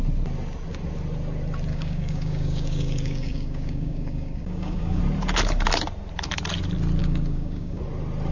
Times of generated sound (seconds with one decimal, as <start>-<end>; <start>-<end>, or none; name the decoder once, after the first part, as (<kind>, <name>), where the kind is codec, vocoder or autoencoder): 1.7-5.0 (codec, DAC); 7.0-7.8